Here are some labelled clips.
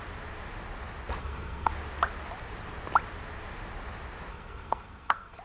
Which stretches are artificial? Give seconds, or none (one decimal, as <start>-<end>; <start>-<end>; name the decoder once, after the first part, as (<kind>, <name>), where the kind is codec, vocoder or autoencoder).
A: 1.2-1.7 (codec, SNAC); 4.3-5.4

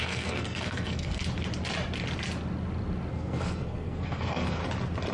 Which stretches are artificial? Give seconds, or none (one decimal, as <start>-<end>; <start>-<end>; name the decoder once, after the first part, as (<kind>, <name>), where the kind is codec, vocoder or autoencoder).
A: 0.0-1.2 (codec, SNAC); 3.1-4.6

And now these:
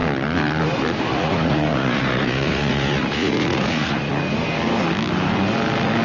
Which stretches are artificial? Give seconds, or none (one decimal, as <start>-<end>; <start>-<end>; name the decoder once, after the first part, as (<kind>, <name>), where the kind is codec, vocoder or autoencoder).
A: 1.1-4.1 (vocoder, Vocos)